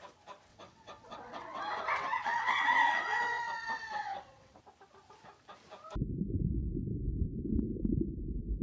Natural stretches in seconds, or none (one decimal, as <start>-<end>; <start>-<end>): 0.0-0.5; 4.6-8.6